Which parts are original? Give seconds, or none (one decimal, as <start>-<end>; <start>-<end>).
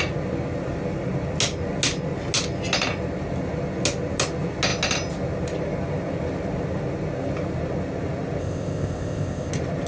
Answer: 0.0-8.4; 9.5-9.9